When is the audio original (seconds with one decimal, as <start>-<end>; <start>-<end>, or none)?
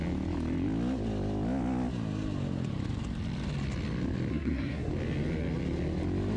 0.0-4.3; 4.9-6.4